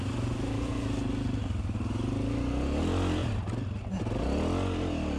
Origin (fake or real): real